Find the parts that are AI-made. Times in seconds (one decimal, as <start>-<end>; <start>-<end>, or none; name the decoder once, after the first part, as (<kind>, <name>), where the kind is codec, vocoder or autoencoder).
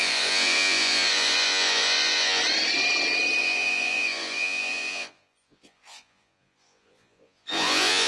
0.0-2.4 (vocoder, Vocos); 3.4-8.1